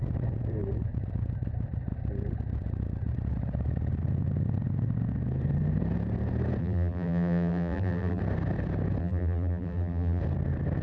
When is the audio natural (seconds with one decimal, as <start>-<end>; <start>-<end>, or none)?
0.0-6.6; 8.2-9.0; 10.2-10.8